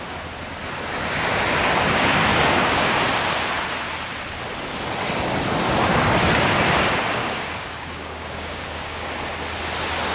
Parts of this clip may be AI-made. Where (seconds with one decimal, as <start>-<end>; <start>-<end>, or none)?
2.3-3.0; 7.2-9.1